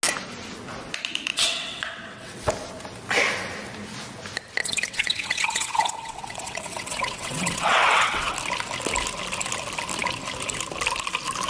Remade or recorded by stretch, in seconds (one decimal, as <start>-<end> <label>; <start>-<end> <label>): 0.0-1.3 recorded; 1.3-2.5 remade; 2.5-4.6 recorded; 4.6-8.3 remade; 8.3-11.5 recorded